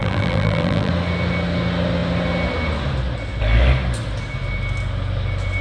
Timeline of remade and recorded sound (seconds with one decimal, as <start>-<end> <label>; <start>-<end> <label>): 0.0-0.9 remade; 0.9-5.6 recorded